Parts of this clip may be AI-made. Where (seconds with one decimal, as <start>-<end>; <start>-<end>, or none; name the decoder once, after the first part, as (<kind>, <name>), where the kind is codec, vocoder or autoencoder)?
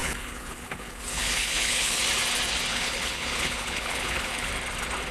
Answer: 0.0-2.0 (codec, HILCodec); 2.7-4.5